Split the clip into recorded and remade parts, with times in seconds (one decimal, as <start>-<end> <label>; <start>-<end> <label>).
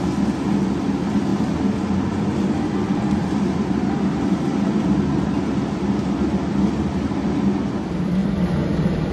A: 0.0-1.3 recorded; 1.3-4.6 remade; 4.6-8.2 recorded; 8.2-9.1 remade